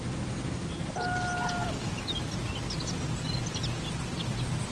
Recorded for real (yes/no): yes